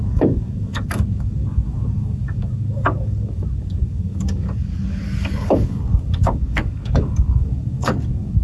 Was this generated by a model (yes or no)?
yes